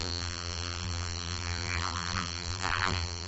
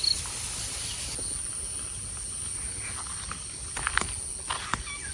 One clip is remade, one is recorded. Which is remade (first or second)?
first